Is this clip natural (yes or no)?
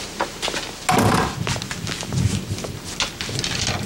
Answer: yes